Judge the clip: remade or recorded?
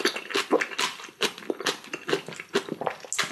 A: recorded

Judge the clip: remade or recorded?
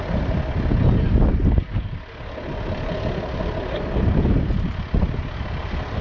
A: recorded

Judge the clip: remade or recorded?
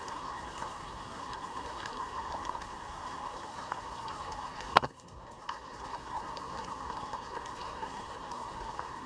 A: remade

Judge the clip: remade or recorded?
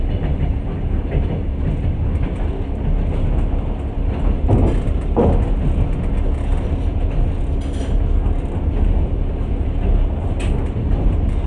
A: recorded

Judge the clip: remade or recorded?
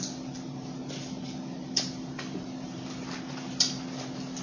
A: recorded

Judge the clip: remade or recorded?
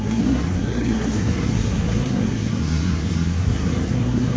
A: remade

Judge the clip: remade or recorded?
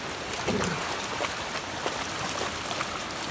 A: recorded